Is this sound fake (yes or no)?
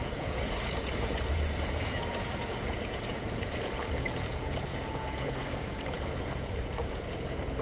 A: yes